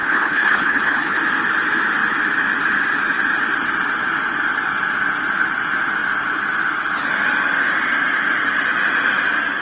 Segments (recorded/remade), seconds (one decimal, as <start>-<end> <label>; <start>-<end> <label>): 0.0-1.2 remade; 1.2-9.6 recorded